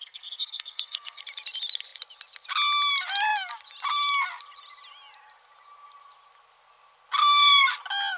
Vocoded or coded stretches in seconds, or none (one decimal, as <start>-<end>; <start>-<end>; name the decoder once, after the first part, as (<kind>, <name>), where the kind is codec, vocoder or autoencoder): 0.0-1.2 (codec, SNAC); 7.2-7.7